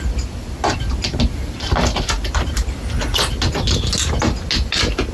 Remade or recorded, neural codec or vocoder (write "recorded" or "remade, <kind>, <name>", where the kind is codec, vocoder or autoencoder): recorded